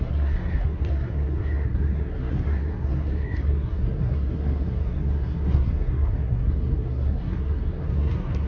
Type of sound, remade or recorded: remade